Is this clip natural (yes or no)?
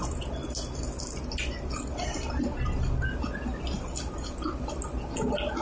yes